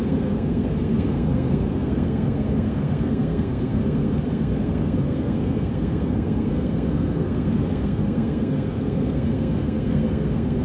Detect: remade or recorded remade